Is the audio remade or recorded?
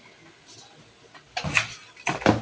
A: recorded